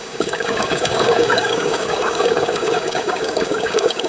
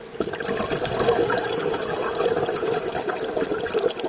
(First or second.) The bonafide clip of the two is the second